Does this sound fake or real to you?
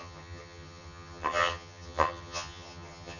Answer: fake